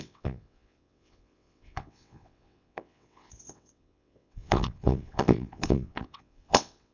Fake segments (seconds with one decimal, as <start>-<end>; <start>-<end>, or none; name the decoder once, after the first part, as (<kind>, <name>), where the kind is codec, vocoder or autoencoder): 0.0-6.9 (vocoder, WaveNeXt)